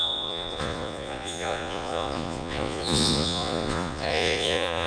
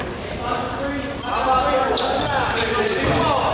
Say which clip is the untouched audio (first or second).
second